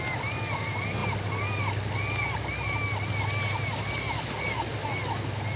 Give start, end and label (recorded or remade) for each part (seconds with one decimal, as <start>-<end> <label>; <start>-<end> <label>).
0.0-5.6 recorded